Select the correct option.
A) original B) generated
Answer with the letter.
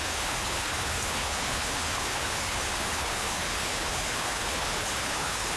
B